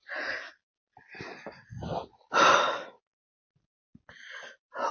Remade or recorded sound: recorded